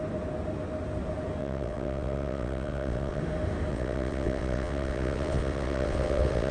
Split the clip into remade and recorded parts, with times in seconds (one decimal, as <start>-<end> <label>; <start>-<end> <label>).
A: 0.0-1.4 recorded; 1.4-3.2 remade; 3.2-3.7 recorded; 3.7-6.5 remade

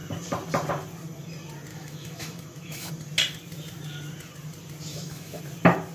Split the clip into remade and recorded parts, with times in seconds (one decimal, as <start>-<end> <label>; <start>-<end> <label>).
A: 0.0-1.7 recorded; 1.7-2.9 remade; 2.9-4.9 recorded; 4.9-5.4 remade; 5.4-5.9 recorded

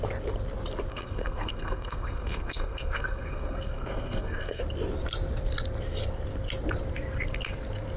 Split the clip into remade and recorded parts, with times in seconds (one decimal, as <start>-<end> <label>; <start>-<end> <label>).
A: 0.0-0.9 recorded; 0.9-4.6 remade; 4.6-8.0 recorded

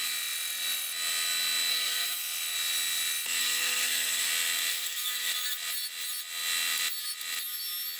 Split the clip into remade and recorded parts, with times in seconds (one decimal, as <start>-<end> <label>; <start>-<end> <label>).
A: 0.0-1.7 recorded; 1.7-2.2 remade; 2.2-3.4 recorded; 3.4-4.3 remade; 4.3-4.7 recorded; 4.7-5.3 remade; 5.3-8.0 recorded

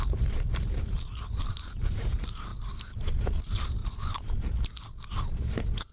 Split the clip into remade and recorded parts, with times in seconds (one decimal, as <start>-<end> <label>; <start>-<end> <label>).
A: 0.0-2.5 remade; 2.5-3.4 recorded; 3.4-3.8 remade; 3.8-5.1 recorded; 5.1-5.9 remade

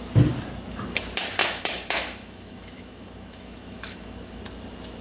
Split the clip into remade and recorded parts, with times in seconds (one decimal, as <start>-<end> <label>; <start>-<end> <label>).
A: 0.0-1.4 recorded; 1.4-4.4 remade; 4.4-5.0 recorded

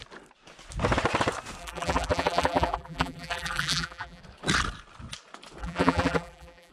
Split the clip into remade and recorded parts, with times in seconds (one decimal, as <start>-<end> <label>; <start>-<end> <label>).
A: 0.0-1.6 recorded; 1.6-4.2 remade; 4.2-5.6 recorded; 5.6-6.7 remade

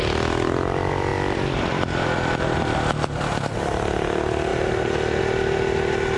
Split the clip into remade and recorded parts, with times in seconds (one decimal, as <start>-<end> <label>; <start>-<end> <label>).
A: 0.0-6.2 recorded